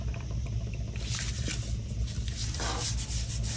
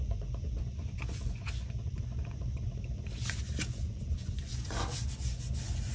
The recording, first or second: first